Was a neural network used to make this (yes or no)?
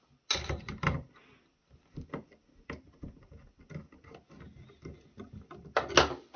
no